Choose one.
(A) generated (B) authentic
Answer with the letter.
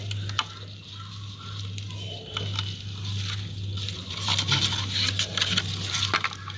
B